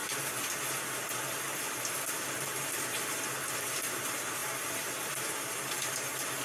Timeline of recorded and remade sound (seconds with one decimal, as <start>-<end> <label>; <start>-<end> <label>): 0.0-6.4 recorded